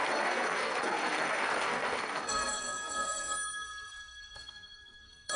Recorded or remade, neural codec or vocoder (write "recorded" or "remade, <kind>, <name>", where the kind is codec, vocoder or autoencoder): remade, codec, SNAC